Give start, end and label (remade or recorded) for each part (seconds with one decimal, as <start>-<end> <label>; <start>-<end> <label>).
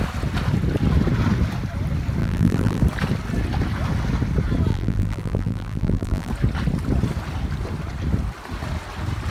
0.0-2.2 recorded; 2.2-2.8 remade; 2.8-4.7 recorded; 4.7-6.3 remade; 6.3-9.3 recorded